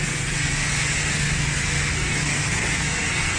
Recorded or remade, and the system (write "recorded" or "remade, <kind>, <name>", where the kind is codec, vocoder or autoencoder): remade, codec, SNAC